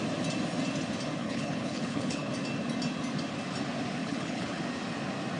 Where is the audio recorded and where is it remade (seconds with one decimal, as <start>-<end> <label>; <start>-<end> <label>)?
0.0-1.2 recorded; 1.2-2.3 remade; 2.3-4.0 recorded; 4.0-4.6 remade; 4.6-5.4 recorded